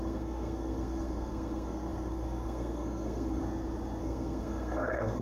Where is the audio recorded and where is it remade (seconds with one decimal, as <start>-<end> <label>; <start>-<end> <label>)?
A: 0.0-3.4 remade; 3.4-4.0 recorded; 4.0-5.2 remade